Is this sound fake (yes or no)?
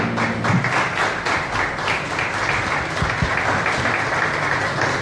no